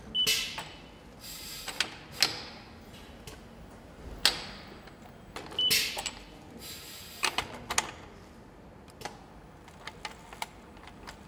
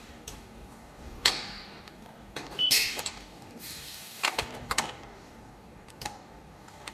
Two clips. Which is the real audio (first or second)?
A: first